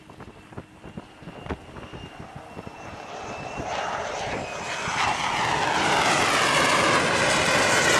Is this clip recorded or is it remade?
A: recorded